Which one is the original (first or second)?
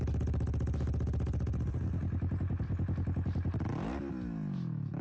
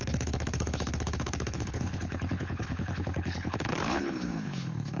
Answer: first